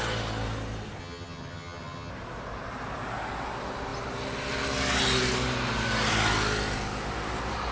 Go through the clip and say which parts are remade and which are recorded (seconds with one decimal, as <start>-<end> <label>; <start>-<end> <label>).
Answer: 0.0-1.0 recorded; 1.0-2.1 remade; 2.1-7.7 recorded